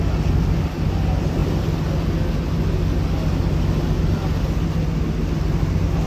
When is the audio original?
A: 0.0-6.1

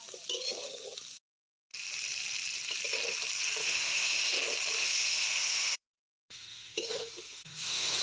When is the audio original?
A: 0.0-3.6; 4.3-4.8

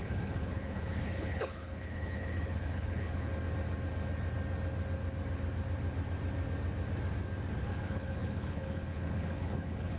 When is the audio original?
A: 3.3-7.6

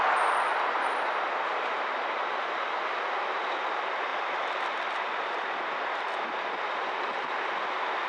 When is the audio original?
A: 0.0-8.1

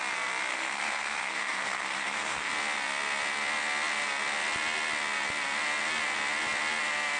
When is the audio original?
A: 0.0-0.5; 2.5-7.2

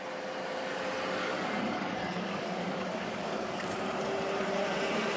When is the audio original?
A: 0.0-1.2; 3.7-5.2